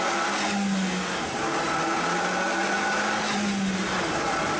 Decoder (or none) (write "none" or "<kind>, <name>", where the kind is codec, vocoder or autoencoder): none